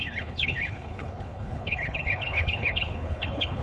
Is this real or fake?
fake